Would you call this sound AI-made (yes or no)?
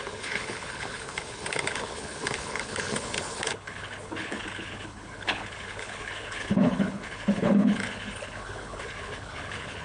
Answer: yes